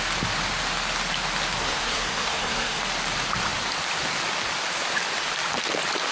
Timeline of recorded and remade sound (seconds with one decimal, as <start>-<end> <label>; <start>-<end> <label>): 0.0-1.6 recorded; 1.6-2.8 remade; 2.8-6.1 recorded